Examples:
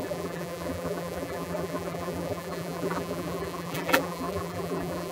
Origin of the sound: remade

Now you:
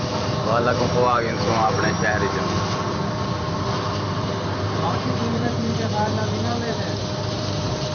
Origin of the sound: remade